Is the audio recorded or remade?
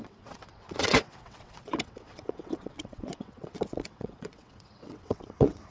remade